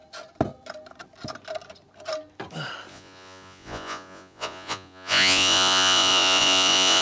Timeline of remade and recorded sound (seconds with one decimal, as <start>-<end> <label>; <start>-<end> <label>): 0.0-2.9 recorded; 2.9-7.0 remade